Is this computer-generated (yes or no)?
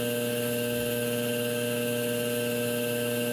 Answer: yes